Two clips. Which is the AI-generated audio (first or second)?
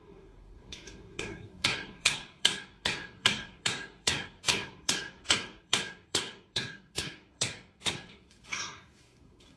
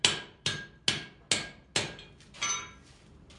first